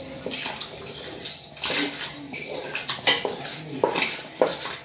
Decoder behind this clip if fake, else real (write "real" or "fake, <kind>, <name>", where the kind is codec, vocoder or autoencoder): real